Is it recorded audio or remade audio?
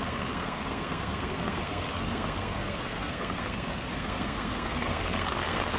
remade